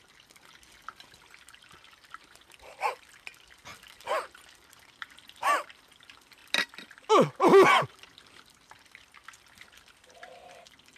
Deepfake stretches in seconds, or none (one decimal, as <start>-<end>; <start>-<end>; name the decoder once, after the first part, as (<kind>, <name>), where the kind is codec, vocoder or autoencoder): none